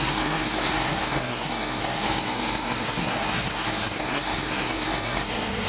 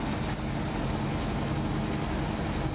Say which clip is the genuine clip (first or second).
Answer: second